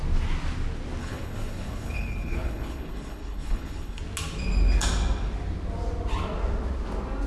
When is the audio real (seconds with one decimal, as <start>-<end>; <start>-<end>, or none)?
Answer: 0.0-1.0; 4.0-7.3